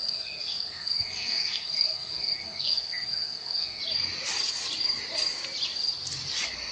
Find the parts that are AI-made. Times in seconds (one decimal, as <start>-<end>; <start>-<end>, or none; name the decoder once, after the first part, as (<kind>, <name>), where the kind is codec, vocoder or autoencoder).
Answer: 0.0-3.8 (codec, SNAC)

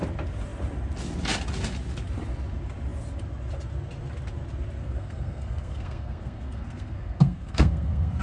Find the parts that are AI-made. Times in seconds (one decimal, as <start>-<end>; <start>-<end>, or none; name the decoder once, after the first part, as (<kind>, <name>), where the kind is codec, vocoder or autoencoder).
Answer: 4.8-8.2 (codec, SNAC)

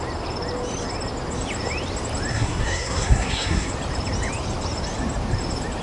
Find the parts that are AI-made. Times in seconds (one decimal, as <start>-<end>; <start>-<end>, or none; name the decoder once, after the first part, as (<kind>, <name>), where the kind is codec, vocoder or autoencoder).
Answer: 2.3-3.7 (codec, SNAC)

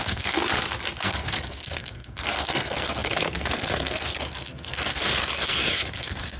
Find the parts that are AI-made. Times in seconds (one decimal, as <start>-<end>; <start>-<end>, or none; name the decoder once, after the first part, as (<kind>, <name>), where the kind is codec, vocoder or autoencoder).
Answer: 0.0-0.4 (codec, SNAC); 1.0-6.4